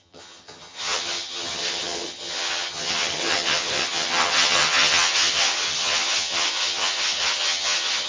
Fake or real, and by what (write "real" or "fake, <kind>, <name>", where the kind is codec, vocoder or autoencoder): fake, vocoder, HiFi-GAN